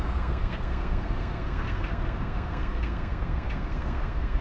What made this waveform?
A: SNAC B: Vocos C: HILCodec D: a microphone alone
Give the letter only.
A